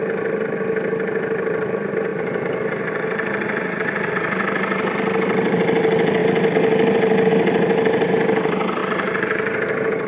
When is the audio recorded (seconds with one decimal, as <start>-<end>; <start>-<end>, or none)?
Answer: 6.2-7.3; 8.8-10.1